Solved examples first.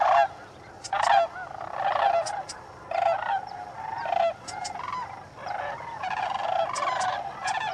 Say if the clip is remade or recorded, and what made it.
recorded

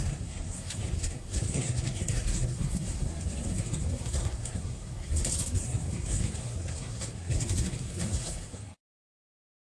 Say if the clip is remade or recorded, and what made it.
remade, codec, SNAC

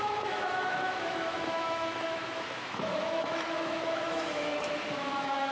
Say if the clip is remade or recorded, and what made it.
remade, autoencoder, DAC-VAE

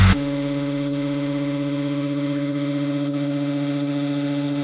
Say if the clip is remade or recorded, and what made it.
remade, autoencoder, DAC-VAE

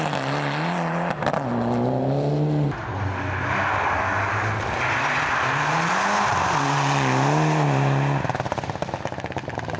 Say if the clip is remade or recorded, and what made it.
recorded